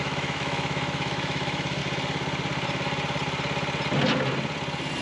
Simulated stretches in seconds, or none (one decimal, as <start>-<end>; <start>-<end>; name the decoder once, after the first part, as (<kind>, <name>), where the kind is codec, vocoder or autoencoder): 0.0-1.8 (autoencoder, DAC-VAE)